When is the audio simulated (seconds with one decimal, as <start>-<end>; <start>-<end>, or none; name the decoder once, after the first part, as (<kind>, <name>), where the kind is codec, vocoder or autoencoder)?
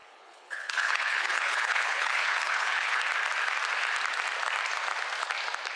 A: 0.0-3.0 (codec, HILCodec)